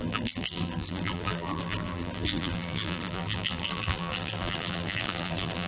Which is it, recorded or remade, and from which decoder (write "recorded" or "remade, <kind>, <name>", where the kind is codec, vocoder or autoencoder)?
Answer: remade, vocoder, BigVGAN v2